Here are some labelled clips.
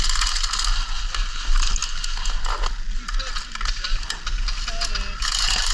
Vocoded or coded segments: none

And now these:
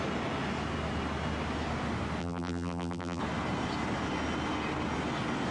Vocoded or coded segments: 2.2-3.2

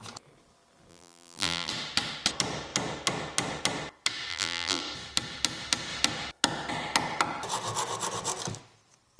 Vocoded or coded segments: 0.9-1.7; 4.3-4.8